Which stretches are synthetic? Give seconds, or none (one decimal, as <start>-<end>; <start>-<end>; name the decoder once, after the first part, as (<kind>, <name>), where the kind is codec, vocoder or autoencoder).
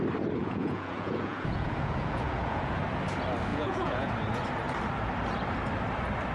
0.4-2.8 (vocoder, Vocos); 3.5-4.1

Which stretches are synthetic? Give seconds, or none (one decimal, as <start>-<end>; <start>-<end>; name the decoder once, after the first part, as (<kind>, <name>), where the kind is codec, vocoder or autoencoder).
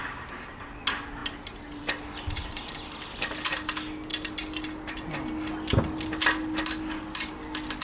none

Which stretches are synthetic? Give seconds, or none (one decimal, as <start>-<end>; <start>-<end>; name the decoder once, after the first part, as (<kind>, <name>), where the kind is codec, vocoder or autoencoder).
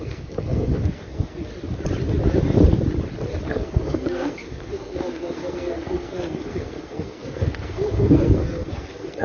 0.0-1.5 (codec, SNAC); 3.5-9.2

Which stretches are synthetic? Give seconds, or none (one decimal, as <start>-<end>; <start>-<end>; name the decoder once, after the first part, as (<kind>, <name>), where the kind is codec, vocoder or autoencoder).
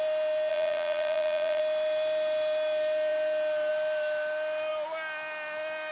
0.5-1.6 (vocoder, BigVGAN v2)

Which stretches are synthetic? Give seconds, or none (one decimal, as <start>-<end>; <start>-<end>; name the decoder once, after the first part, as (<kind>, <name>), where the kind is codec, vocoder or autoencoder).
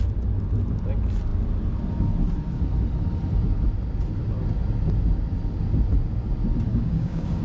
6.7-7.4 (codec, DAC)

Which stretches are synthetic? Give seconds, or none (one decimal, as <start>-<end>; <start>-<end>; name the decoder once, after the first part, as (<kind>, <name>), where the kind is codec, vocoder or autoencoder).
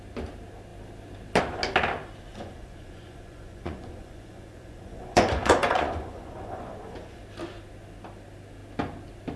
2.3-7.2 (vocoder, Vocos)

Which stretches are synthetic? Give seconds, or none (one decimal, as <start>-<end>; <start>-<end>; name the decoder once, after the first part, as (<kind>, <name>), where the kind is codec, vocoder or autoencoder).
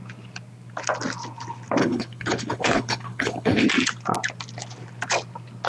1.8-3.7 (codec, HILCodec)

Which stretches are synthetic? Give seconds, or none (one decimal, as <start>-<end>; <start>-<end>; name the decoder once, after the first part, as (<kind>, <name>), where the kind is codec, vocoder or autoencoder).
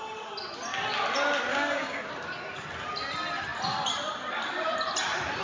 1.5-2.1 (codec, DAC)